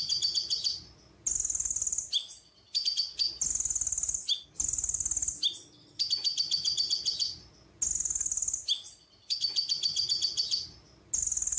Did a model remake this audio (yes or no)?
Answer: no